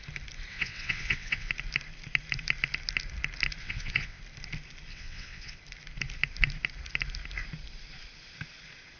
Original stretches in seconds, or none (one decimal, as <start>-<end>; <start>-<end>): 0.0-0.5; 1.5-3.6; 4.2-4.9; 5.6-9.0